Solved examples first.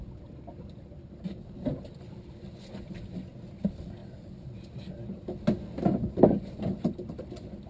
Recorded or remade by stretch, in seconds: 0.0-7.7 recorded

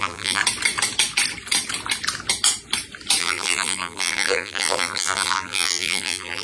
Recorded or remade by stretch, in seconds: 0.0-0.4 remade; 0.4-3.2 recorded; 3.2-6.4 remade

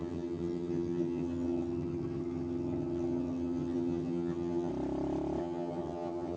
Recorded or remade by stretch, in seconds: 0.0-4.7 remade; 4.7-5.4 recorded; 5.4-6.4 remade

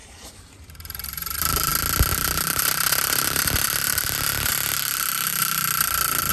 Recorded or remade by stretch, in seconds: 0.0-1.7 remade; 1.7-2.1 recorded; 2.1-4.5 remade; 4.5-6.3 recorded

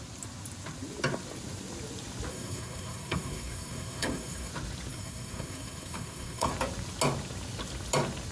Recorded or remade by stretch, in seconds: 0.0-2.3 recorded; 2.3-4.5 remade; 4.5-4.9 recorded; 4.9-6.5 remade; 6.5-8.3 recorded